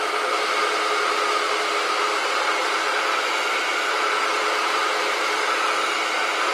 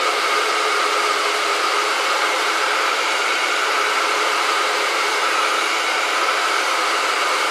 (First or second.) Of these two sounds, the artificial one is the second